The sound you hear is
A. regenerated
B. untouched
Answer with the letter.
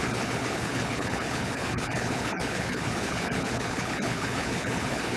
A